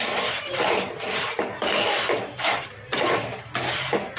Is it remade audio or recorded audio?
remade